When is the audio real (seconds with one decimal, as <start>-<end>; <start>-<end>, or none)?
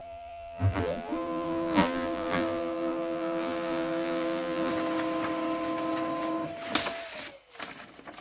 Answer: 4.7-8.2